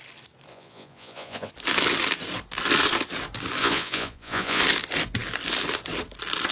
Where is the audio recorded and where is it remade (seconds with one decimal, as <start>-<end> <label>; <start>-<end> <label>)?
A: 0.0-0.5 recorded; 0.5-1.5 remade; 1.5-3.6 recorded; 3.6-4.6 remade; 4.6-6.5 recorded